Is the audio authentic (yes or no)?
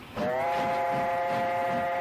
yes